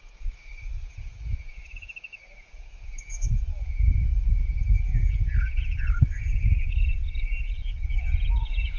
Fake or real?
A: fake